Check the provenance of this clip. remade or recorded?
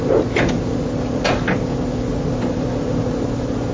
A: recorded